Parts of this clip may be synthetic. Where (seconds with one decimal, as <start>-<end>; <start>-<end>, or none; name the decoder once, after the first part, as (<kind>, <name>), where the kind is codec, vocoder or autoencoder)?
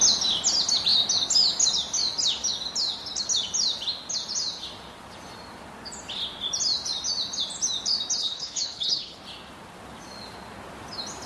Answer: 8.2-9.2 (codec, HILCodec)